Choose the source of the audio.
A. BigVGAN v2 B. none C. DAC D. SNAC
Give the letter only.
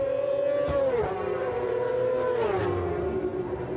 B